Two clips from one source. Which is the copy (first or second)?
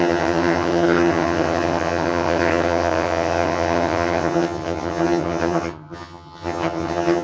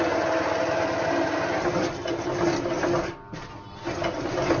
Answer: first